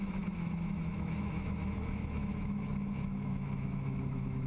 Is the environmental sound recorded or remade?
remade